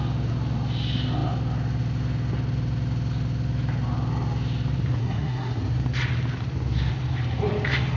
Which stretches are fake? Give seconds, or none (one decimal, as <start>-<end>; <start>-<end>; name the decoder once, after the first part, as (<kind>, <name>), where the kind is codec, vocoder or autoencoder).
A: 5.0-5.6 (codec, SNAC)